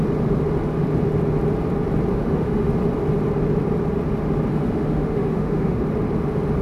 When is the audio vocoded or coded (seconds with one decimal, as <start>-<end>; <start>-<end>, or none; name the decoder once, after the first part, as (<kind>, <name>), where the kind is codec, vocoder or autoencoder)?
2.1-2.7 (autoencoder, DAC-VAE); 4.5-5.8